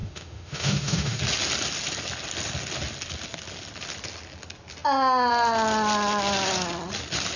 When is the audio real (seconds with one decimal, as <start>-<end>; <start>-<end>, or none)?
1.2-7.4